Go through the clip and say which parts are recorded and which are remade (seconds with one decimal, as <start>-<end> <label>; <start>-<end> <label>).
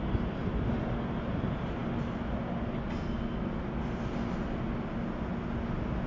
0.0-6.1 recorded